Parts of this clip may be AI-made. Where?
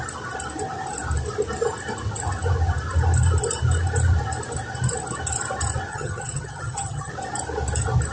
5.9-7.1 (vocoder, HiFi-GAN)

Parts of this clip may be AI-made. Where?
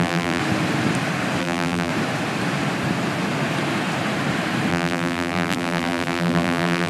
0.0-0.4 (vocoder, BigVGAN v2); 1.4-1.9; 4.7-6.9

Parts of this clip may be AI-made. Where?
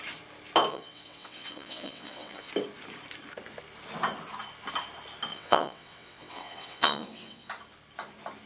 0.7-2.5 (vocoder, WaveNeXt); 5.3-7.5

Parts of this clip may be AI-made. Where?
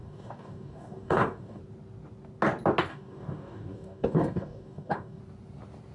0.0-1.6 (codec, DAC); 2.9-5.2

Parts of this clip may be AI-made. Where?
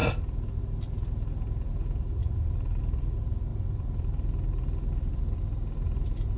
none